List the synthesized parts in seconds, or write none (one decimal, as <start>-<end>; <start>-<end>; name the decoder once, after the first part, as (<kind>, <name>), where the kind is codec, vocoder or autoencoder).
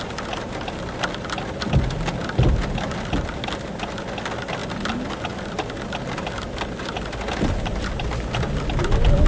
none